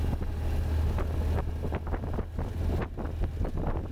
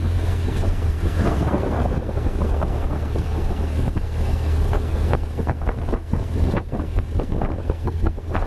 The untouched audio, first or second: first